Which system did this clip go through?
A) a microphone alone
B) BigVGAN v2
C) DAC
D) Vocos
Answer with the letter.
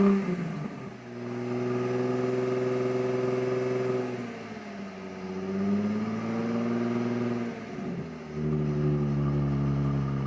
A